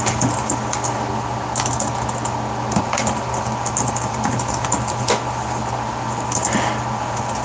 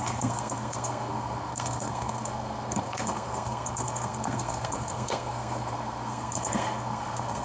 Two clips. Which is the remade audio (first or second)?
second